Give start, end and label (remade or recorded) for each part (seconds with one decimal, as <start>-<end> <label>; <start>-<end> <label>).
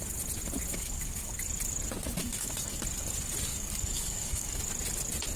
0.0-0.7 recorded; 0.7-1.3 remade; 1.3-2.2 recorded; 2.2-2.8 remade; 2.8-3.5 recorded; 3.5-4.6 remade; 4.6-5.4 recorded